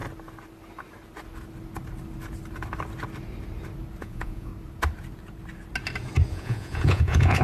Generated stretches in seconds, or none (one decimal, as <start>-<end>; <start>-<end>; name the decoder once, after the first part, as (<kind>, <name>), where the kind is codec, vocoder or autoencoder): 4.0-4.5 (vocoder, Vocos); 6.3-7.4